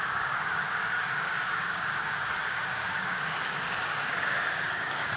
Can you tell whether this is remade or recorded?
remade